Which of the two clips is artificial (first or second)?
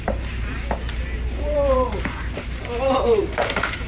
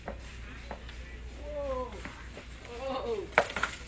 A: first